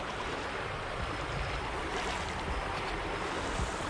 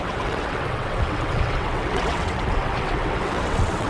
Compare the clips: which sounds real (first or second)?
first